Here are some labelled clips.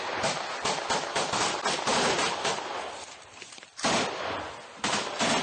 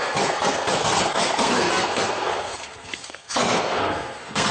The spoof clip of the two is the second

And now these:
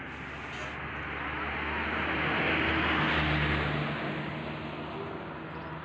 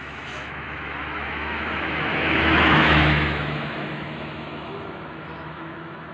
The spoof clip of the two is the second